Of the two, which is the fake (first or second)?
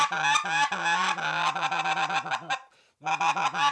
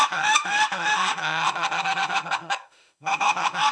second